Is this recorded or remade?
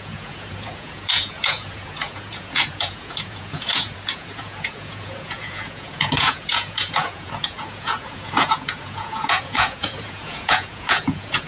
remade